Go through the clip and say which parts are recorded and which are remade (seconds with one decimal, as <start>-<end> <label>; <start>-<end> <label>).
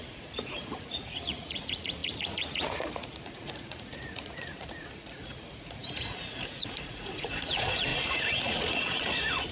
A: 0.0-9.5 remade